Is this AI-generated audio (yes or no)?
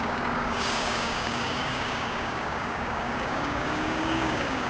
yes